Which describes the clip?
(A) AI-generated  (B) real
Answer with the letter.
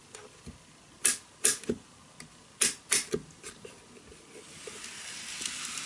B